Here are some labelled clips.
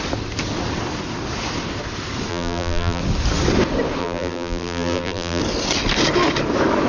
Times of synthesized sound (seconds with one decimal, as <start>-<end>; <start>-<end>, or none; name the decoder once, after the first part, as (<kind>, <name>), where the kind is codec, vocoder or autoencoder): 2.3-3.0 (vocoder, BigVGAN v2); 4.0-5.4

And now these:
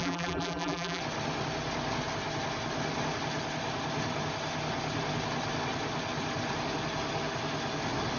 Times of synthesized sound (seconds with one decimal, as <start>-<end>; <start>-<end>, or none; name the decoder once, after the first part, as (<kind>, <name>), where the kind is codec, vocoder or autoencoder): 0.0-1.0 (vocoder, BigVGAN v2)

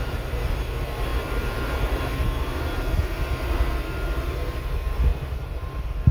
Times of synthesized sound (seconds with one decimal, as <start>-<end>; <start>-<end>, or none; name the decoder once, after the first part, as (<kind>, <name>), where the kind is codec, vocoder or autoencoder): 0.0-0.5 (vocoder, BigVGAN v2); 1.1-2.0; 5.1-6.1

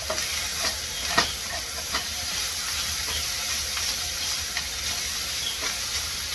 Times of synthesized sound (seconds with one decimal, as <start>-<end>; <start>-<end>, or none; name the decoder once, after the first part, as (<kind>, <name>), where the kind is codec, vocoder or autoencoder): 0.5-3.8 (vocoder, BigVGAN v2)

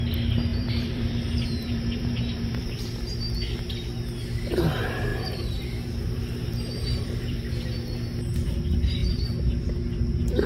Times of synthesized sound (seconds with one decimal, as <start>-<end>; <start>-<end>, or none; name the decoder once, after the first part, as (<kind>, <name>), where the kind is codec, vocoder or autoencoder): 0.5-2.9 (vocoder, BigVGAN v2); 5.1-7.5; 9.0-9.7

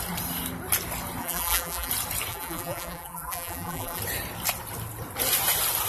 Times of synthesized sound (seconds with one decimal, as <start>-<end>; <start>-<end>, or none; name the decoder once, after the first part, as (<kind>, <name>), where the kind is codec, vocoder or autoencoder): 1.2-1.9 (vocoder, BigVGAN v2); 2.3-4.0

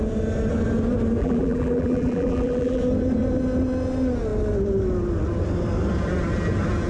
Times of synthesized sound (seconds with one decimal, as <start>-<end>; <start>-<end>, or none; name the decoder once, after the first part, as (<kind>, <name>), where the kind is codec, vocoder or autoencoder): 1.2-2.8 (vocoder, BigVGAN v2)